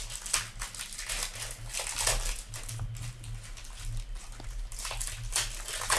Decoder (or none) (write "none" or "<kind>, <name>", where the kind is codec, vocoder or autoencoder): none